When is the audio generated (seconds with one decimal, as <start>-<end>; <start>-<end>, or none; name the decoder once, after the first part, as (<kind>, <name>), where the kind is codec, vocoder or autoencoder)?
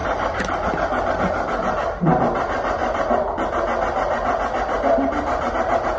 none